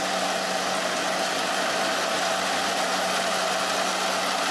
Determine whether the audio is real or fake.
real